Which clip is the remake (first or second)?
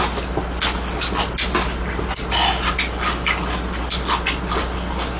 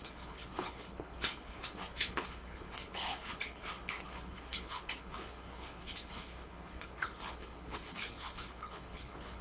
second